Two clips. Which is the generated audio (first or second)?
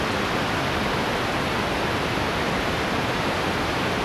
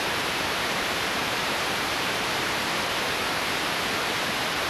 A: second